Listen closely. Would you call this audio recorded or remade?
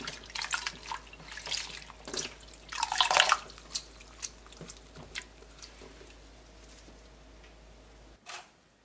recorded